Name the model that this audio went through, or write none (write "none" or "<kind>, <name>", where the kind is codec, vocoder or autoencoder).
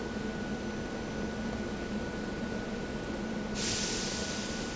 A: none